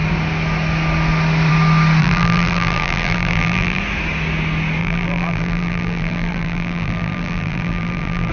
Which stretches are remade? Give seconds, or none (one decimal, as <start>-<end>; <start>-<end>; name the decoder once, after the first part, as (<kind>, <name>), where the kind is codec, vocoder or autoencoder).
2.0-3.8 (vocoder, BigVGAN v2); 4.8-8.3